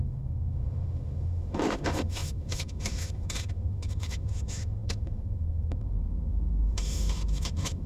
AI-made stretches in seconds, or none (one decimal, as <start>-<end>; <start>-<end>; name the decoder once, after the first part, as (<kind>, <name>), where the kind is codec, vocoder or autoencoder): 0.0-7.9 (autoencoder, DAC-VAE)